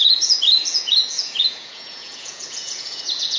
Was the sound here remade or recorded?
remade